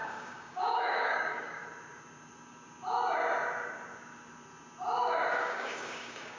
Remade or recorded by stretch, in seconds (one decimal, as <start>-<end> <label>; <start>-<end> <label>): 0.0-1.6 remade; 1.6-5.4 recorded; 5.4-6.4 remade